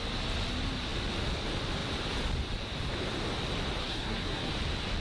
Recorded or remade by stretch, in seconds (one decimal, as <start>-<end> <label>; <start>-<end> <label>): 0.0-3.8 recorded; 3.8-4.5 remade; 4.5-5.0 recorded